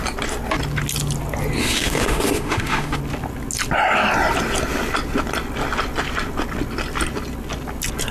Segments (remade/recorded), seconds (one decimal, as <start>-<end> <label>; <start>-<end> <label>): 0.0-1.6 recorded; 1.6-3.0 remade; 3.0-8.1 recorded